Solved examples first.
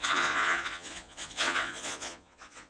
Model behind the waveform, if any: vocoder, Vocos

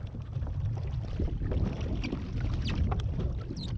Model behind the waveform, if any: none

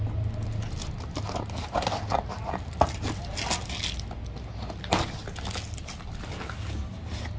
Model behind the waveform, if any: none